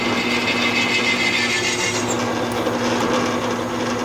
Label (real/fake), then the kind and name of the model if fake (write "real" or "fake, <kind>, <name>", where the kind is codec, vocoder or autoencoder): real